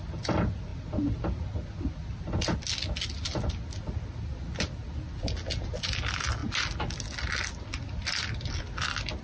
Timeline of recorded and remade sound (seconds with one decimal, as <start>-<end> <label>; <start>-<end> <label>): 0.0-9.2 recorded